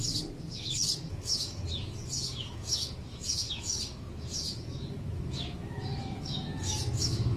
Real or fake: fake